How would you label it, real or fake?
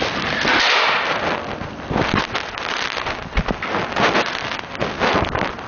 real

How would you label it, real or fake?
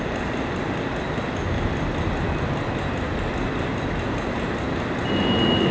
real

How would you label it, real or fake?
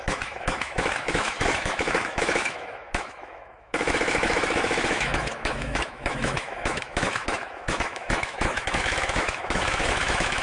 fake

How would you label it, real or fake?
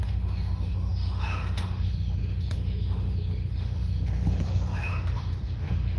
fake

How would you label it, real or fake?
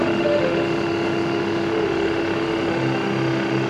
fake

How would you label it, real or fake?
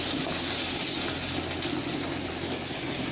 real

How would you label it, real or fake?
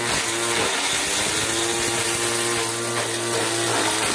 real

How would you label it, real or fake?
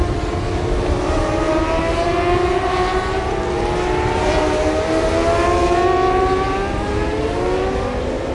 real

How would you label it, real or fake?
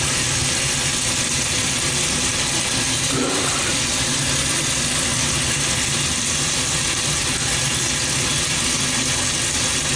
real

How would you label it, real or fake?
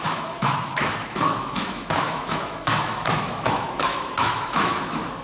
fake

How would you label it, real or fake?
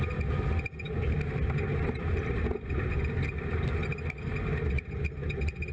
real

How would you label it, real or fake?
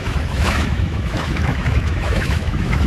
fake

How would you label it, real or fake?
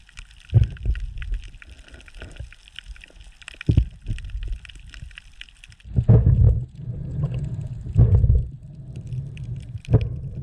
real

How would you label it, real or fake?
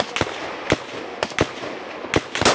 real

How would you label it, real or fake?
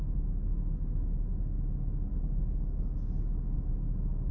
real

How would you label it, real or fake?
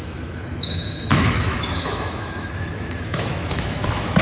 fake